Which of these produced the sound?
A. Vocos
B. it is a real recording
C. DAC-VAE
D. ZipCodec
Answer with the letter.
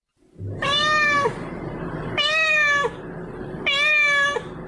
B